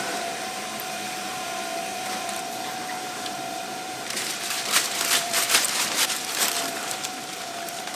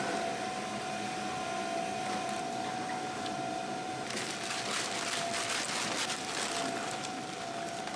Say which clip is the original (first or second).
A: second